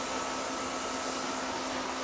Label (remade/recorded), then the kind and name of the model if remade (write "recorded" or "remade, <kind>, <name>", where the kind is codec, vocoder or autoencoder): recorded